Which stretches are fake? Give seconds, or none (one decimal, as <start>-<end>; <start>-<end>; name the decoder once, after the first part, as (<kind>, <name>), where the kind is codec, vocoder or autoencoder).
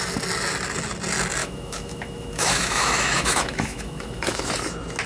1.4-4.5 (autoencoder, DAC-VAE)